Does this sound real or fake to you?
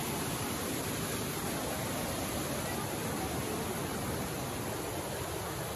fake